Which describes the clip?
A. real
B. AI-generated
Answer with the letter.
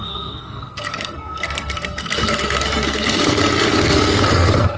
B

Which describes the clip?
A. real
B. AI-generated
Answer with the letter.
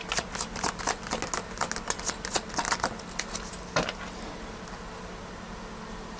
A